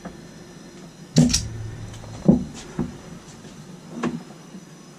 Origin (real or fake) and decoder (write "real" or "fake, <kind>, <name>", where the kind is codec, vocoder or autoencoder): real